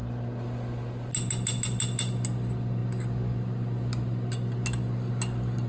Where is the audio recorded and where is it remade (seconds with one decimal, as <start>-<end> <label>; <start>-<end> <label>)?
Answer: 0.0-5.7 recorded